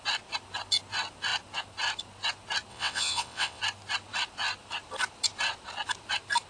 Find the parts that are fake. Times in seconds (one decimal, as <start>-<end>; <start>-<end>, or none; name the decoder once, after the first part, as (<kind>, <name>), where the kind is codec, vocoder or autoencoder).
2.7-3.6 (vocoder, WaveNeXt)